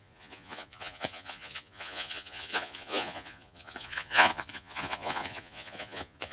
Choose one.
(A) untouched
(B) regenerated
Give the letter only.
B